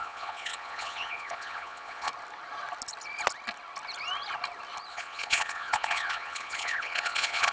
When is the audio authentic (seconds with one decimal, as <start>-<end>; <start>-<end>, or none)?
2.1-4.9